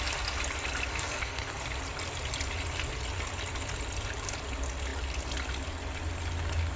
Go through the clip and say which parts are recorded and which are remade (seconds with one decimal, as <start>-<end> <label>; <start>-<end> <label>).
0.0-0.9 recorded; 0.9-1.5 remade; 1.5-6.8 recorded